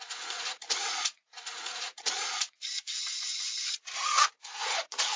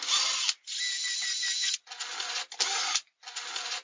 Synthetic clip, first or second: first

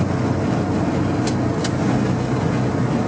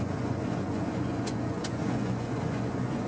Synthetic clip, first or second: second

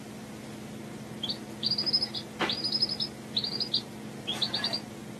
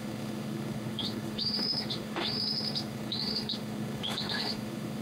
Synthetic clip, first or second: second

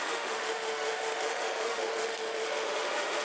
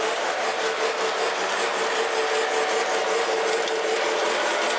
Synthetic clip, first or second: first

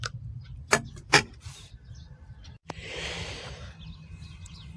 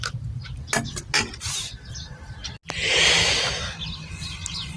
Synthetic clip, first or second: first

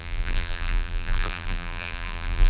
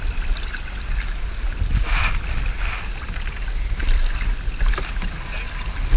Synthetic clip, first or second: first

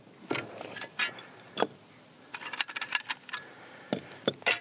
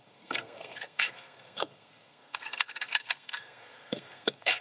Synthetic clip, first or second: second